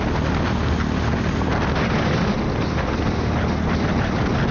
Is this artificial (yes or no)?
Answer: no